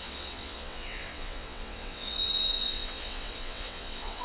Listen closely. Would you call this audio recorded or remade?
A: remade